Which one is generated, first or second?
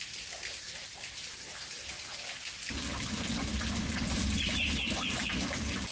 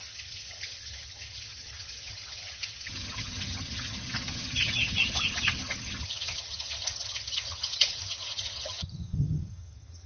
second